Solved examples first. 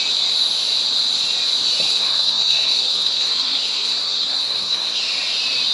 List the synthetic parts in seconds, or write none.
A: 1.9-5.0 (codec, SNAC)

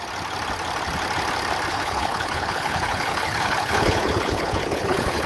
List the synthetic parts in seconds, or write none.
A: 1.7-5.3 (codec, HILCodec)

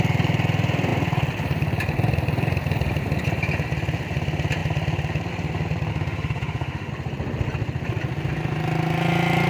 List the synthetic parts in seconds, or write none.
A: 5.9-6.9 (autoencoder, DAC-VAE)

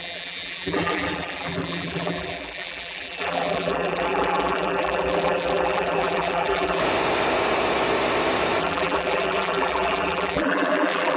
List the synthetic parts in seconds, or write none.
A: 0.0-6.8 (vocoder, BigVGAN v2); 8.6-11.2

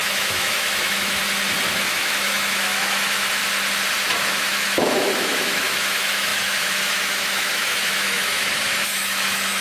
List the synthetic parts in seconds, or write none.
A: 0.0-1.2 (autoencoder, DAC-VAE); 1.7-3.4; 4.3-9.6

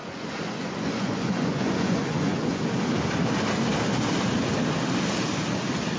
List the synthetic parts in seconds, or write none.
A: 0.0-2.6 (vocoder, Vocos)